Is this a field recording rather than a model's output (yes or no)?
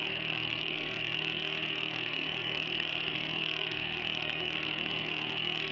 no